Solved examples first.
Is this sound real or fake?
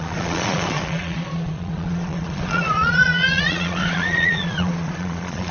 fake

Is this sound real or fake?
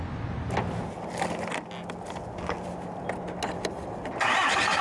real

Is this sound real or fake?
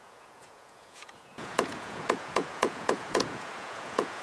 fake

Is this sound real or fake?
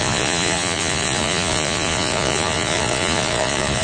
fake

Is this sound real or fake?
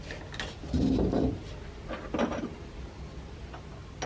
real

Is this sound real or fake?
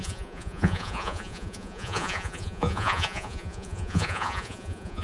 fake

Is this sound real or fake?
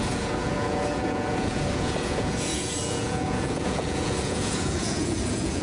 fake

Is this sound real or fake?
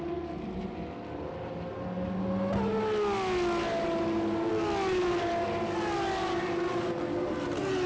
real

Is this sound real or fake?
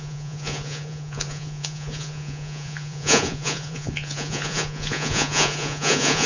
fake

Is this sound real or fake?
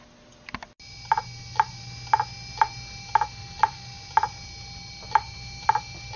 real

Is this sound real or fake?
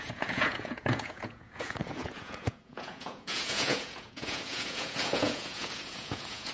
fake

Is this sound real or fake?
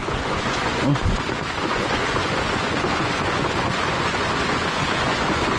fake